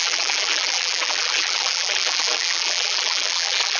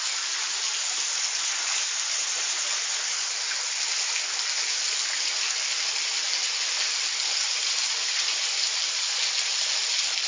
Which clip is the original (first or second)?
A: second